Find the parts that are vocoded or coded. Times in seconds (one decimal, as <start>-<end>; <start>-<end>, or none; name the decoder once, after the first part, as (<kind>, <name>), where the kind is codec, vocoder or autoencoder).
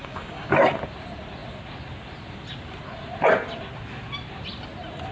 0.0-0.5 (codec, DAC)